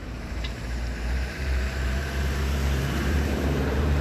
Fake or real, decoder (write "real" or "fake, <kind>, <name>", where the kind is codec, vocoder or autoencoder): fake, vocoder, BigVGAN v2